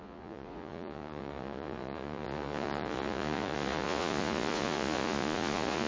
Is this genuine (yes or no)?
no